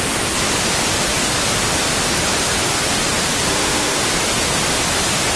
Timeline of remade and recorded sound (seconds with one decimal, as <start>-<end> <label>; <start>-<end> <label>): 0.0-3.5 recorded; 3.5-4.0 remade; 4.0-5.4 recorded